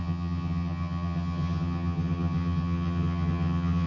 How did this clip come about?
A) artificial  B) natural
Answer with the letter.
A